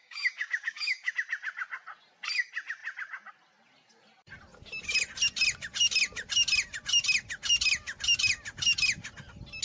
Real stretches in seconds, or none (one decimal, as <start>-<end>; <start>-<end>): 1.1-9.6